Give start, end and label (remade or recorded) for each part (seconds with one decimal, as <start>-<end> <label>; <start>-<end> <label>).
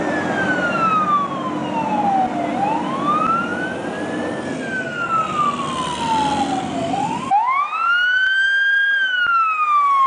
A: 0.0-10.1 recorded